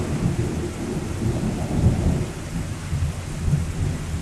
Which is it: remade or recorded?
recorded